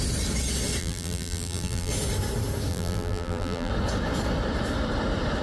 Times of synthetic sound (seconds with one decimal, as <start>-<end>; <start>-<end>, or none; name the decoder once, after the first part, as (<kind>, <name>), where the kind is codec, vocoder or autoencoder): 0.8-1.9 (vocoder, BigVGAN v2); 2.7-3.7